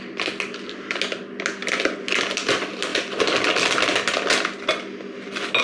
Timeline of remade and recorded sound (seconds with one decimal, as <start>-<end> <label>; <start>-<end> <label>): 0.0-5.6 recorded